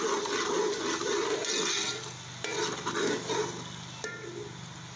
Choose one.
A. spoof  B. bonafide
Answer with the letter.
B